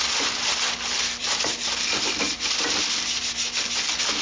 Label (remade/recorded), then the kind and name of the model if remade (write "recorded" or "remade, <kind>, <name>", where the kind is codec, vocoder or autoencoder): recorded